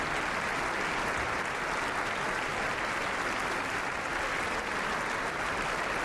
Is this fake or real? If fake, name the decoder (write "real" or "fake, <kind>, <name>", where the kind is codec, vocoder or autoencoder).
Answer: real